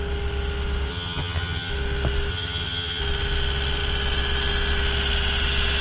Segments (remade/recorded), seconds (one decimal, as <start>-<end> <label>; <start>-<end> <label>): 0.0-0.9 recorded; 0.9-1.7 remade; 1.7-2.3 recorded; 2.3-3.0 remade; 3.0-5.8 recorded